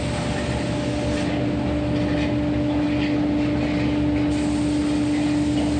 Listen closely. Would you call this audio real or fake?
real